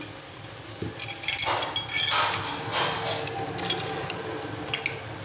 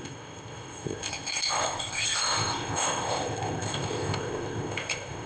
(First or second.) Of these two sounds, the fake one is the second